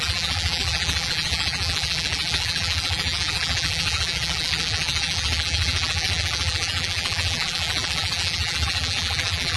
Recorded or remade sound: remade